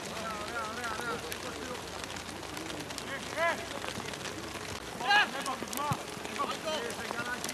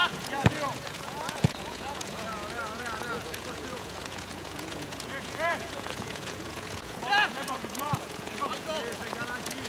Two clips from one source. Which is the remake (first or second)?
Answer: second